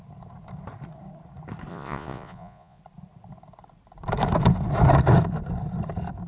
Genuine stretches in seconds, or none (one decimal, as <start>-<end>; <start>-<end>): 0.0-1.7; 2.8-6.3